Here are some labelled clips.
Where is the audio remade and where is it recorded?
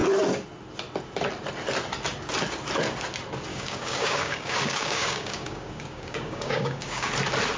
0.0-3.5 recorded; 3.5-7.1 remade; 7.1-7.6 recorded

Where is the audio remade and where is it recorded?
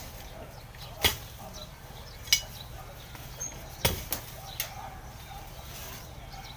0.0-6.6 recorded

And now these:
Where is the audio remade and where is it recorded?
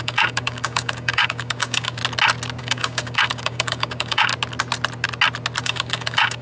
0.0-2.0 remade; 2.0-2.6 recorded; 2.6-4.3 remade; 4.3-5.6 recorded; 5.6-6.4 remade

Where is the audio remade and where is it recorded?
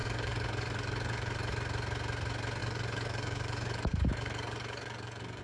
0.0-1.5 remade; 1.5-2.6 recorded; 2.6-5.4 remade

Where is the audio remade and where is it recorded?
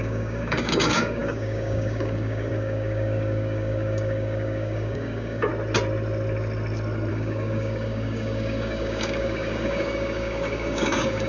0.0-5.5 remade; 5.5-7.1 recorded; 7.1-11.3 remade